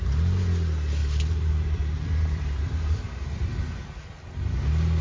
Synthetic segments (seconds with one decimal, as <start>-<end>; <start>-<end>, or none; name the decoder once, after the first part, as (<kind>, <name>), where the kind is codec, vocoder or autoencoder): 1.0-3.5 (vocoder, BigVGAN v2)